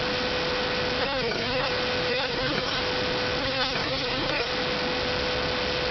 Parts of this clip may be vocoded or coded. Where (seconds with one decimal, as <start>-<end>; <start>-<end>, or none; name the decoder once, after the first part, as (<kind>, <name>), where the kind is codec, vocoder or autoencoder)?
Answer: 1.0-1.7 (codec, SNAC); 2.1-2.8; 3.4-4.5